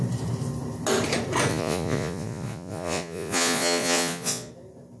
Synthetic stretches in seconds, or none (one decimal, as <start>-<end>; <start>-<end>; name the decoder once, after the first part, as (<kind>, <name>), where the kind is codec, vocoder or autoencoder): 1.5-4.5 (vocoder, Vocos)

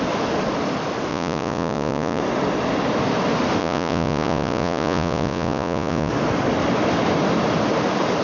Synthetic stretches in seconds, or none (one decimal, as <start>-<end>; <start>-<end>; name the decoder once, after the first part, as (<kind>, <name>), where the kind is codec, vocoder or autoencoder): 1.1-2.2 (vocoder, Vocos); 3.6-6.1